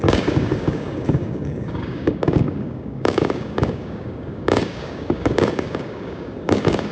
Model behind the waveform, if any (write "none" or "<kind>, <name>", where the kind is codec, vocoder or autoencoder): codec, DAC